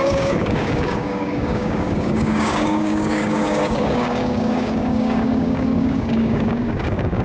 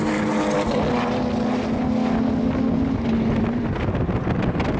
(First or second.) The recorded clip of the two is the second